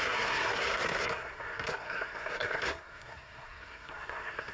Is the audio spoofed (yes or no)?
yes